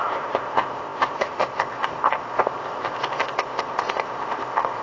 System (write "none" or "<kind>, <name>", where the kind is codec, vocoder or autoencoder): codec, ZipCodec